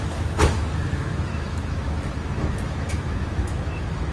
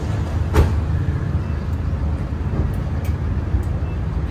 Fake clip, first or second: first